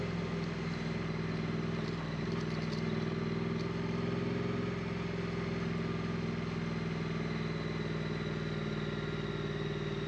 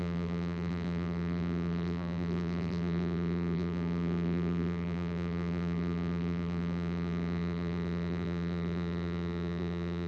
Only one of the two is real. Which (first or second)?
first